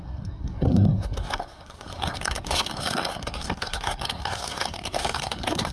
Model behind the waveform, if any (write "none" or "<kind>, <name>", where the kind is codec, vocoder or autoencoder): codec, SNAC